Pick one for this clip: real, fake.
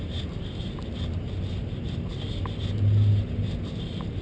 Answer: real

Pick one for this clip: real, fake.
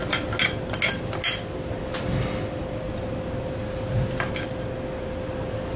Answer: real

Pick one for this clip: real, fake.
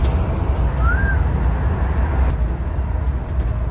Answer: real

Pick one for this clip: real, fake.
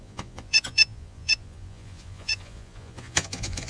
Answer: fake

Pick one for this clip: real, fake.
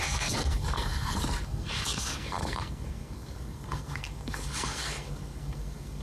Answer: fake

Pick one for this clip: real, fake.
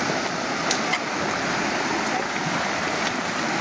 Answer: real